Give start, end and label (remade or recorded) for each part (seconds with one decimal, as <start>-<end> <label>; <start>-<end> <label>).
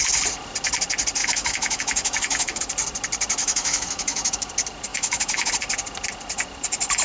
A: 0.0-1.2 recorded; 1.2-2.6 remade; 2.6-3.4 recorded; 3.4-4.5 remade; 4.5-4.9 recorded; 4.9-5.5 remade; 5.5-7.0 recorded